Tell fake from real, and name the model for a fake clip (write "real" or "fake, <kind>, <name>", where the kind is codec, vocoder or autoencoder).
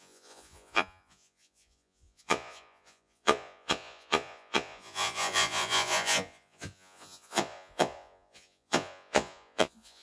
fake, vocoder, Vocos